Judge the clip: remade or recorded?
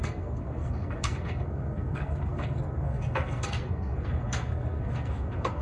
remade